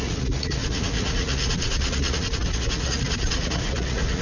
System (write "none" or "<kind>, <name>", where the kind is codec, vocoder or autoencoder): vocoder, Vocos